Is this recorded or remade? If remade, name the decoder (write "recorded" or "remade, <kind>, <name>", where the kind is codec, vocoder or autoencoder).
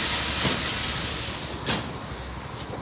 recorded